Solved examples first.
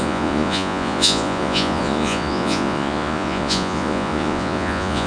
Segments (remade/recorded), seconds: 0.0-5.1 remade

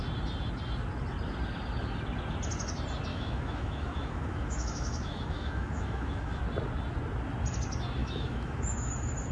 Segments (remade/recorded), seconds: 0.0-3.1 recorded; 3.1-6.4 remade; 6.4-8.0 recorded; 8.0-8.9 remade; 8.9-9.3 recorded

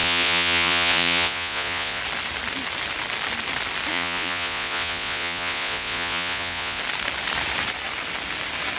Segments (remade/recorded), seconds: 0.0-2.0 remade; 2.0-3.9 recorded; 3.9-6.8 remade; 6.8-8.8 recorded

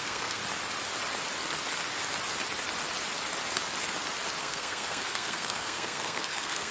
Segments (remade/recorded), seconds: 0.0-0.4 remade; 0.4-4.4 recorded; 4.4-6.7 remade